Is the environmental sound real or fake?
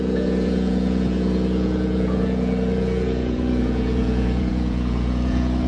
fake